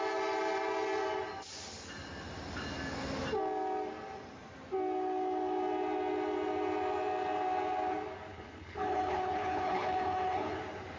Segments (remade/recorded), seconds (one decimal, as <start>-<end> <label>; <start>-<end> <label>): 0.0-8.3 recorded; 8.3-10.6 remade; 10.6-11.0 recorded